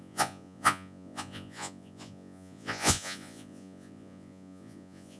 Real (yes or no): no